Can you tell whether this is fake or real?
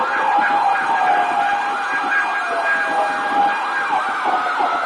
real